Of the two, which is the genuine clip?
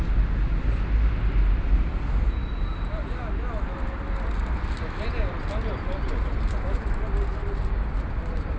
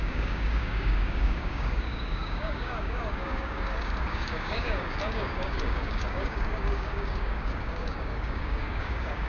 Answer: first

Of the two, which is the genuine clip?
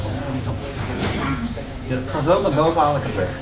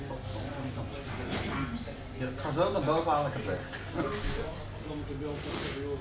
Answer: second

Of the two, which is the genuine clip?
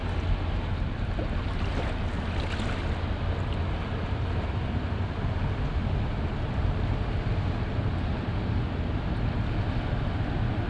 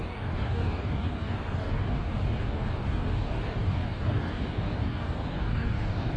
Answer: first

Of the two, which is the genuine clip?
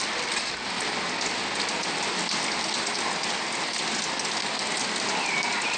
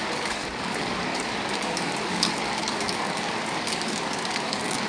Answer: first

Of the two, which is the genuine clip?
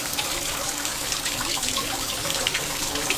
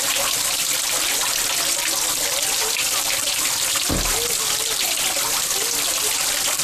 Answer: second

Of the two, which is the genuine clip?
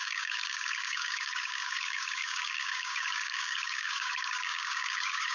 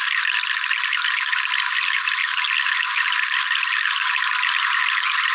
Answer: second